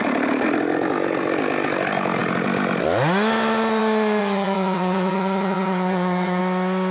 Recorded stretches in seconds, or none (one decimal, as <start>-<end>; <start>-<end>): 0.0-4.2; 6.4-6.9